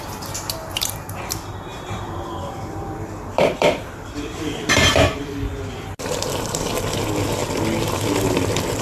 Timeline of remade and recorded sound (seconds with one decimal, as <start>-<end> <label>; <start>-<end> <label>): 0.0-0.6 recorded; 0.6-1.2 remade; 1.2-1.7 recorded; 1.7-5.2 remade; 5.2-8.8 recorded